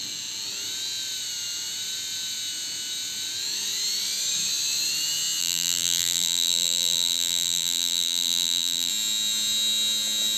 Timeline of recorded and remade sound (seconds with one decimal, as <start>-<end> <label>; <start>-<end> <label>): 0.0-5.4 recorded; 5.4-8.9 remade; 8.9-10.4 recorded